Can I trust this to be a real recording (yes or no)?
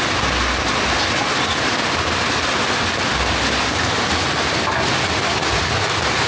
yes